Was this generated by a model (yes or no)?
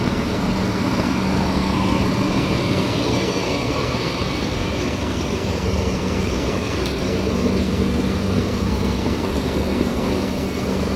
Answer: yes